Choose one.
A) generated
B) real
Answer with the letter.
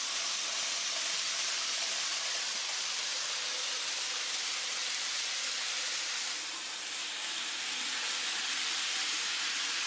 A